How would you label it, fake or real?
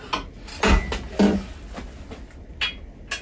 real